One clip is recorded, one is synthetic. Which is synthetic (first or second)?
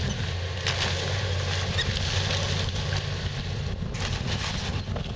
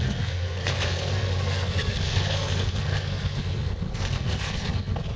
second